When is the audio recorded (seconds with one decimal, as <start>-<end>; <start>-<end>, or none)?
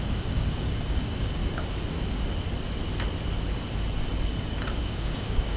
1.4-4.8